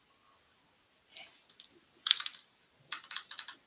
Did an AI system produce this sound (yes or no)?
no